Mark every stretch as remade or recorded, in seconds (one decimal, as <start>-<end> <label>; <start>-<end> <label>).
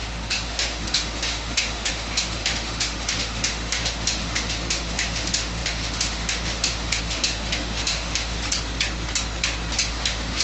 0.0-8.4 remade; 8.4-9.9 recorded; 9.9-10.4 remade